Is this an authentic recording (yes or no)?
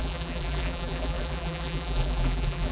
no